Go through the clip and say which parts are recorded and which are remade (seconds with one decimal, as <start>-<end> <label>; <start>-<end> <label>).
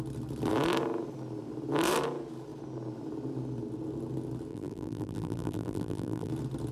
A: 0.0-4.5 recorded; 4.5-6.3 remade; 6.3-6.7 recorded